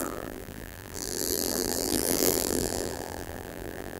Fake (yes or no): yes